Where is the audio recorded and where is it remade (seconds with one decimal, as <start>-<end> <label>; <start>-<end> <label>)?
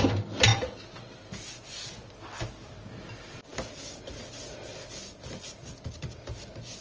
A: 0.0-6.8 recorded